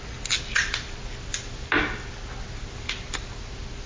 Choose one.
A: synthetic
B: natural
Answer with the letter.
B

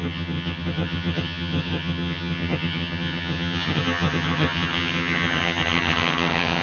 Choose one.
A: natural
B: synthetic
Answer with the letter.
B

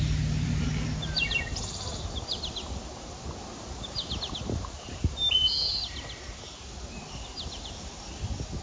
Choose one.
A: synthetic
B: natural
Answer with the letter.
B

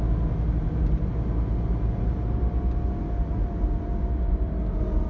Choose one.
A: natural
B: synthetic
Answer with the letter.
A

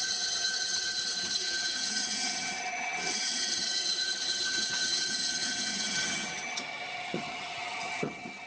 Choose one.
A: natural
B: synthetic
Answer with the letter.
B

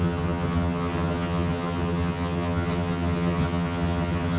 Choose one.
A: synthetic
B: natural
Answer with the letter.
A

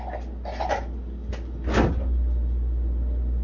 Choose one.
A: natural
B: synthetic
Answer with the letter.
A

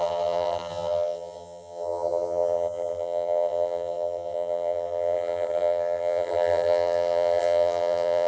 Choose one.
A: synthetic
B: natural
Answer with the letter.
A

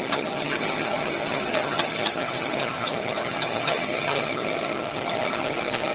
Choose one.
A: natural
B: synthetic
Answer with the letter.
B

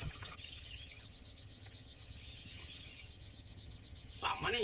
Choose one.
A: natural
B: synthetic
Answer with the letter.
B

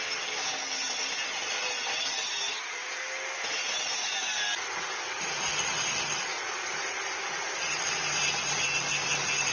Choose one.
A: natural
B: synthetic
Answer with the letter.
A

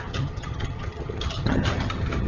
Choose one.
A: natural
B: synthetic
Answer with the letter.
B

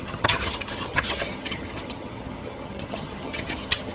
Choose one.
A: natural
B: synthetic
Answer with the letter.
B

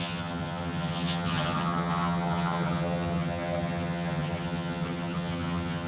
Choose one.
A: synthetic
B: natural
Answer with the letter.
A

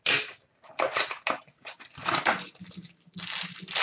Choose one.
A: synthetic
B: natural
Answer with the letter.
B